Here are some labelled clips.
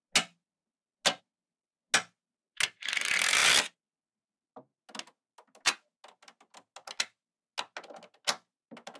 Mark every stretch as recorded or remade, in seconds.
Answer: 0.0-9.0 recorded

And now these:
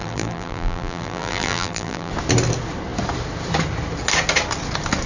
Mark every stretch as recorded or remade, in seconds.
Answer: 0.0-2.1 remade; 2.1-5.1 recorded